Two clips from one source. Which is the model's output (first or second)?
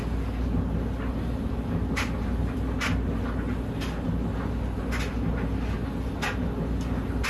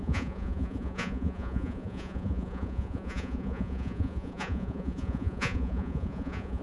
second